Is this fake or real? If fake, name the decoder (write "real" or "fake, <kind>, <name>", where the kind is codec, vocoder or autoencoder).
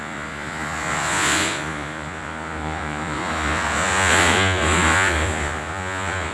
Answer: fake, vocoder, Vocos